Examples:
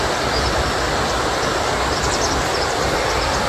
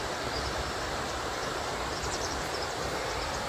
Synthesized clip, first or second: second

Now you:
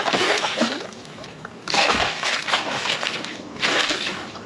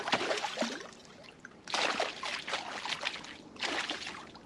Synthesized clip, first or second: first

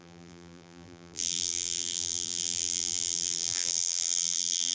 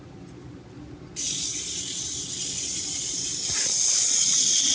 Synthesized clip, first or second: first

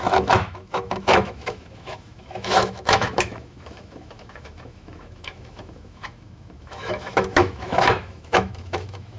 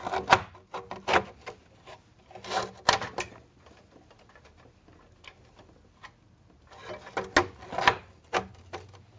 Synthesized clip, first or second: first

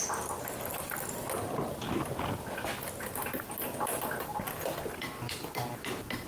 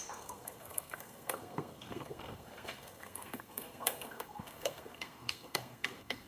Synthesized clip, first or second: second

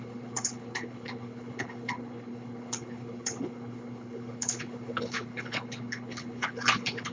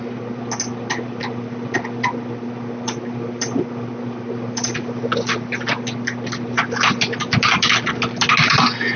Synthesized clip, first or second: first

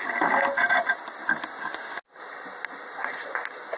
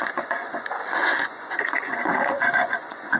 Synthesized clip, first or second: second